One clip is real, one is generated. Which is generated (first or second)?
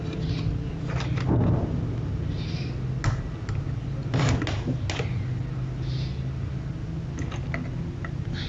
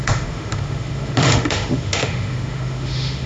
second